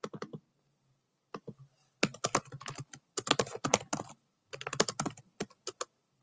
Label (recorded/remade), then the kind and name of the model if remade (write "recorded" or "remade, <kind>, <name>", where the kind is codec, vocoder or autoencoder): recorded